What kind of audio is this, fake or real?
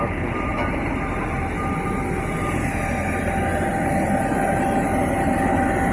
real